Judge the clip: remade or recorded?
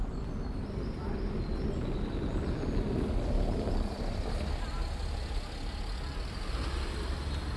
recorded